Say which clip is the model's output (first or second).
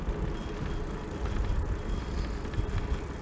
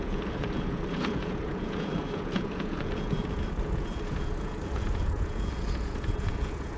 second